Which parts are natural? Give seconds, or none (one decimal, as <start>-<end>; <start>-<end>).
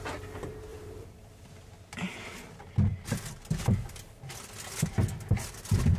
0.0-0.7; 4.3-6.0